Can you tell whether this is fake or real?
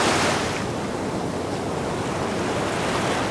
real